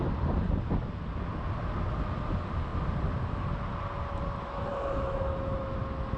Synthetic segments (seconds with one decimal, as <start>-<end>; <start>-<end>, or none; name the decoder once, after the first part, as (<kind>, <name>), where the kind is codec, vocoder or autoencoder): 4.7-5.8 (autoencoder, DAC-VAE)